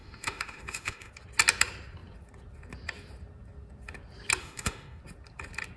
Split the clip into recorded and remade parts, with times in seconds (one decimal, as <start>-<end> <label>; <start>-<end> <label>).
0.0-1.1 remade; 1.1-4.4 recorded; 4.4-5.0 remade; 5.0-5.8 recorded